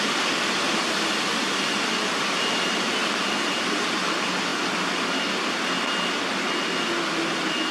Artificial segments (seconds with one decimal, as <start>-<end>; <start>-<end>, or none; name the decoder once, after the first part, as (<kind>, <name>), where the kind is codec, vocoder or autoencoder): none